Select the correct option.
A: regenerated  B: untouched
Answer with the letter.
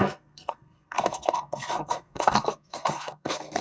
A